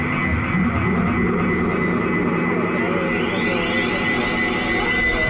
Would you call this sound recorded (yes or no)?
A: yes